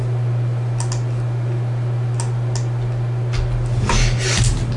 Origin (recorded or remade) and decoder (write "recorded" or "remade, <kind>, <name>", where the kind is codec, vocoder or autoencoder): recorded